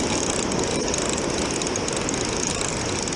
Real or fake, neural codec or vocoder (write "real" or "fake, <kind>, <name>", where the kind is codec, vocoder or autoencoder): real